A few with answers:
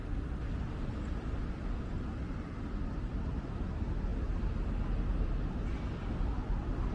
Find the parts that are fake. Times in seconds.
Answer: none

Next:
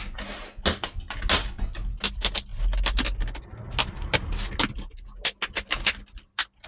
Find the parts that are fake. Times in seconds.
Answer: none

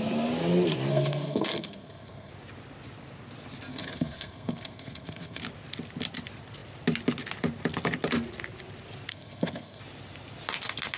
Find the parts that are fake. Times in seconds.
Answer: 0.9-2.3 (codec, SNAC); 3.7-5.4; 9.1-9.8

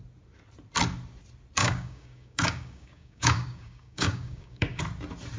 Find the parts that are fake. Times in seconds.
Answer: 1.6-4.8 (codec, DAC)

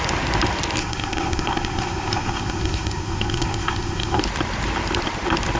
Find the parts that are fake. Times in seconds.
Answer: 0.8-4.2 (codec, SNAC)

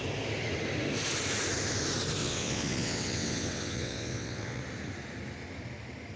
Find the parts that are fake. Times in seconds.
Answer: 2.2-4.6 (vocoder, WaveNeXt)

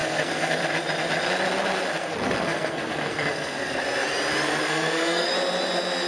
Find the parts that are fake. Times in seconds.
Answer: 0.0-0.6 (codec, SNAC); 2.0-3.8; 4.6-5.3